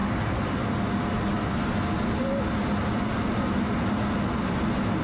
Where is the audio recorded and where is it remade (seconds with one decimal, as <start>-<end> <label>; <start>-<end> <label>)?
0.0-5.0 recorded